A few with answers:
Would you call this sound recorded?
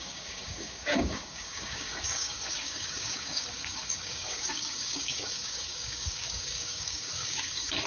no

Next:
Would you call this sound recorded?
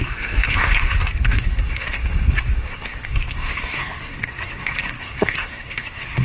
no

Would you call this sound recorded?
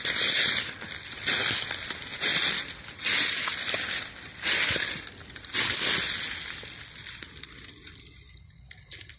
yes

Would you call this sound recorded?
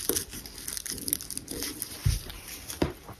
yes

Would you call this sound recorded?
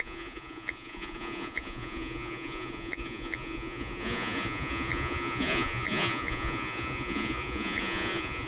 no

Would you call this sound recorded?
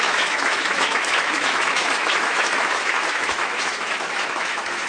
no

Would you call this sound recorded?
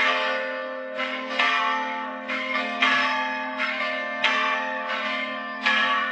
no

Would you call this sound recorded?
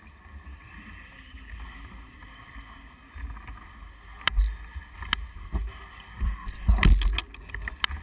yes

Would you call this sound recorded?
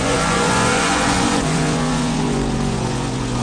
no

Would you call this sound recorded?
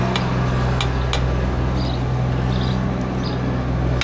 yes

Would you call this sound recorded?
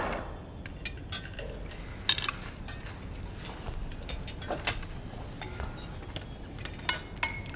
yes